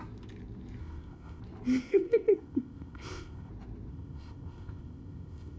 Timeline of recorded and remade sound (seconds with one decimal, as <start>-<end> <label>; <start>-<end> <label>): 0.0-0.8 recorded; 0.8-1.4 remade; 1.4-1.8 recorded; 1.8-3.5 remade; 3.5-3.9 recorded; 3.9-5.6 remade